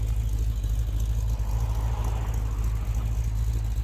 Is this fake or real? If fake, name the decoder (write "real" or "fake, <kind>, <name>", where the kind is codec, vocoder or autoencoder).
real